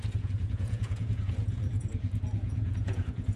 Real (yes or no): no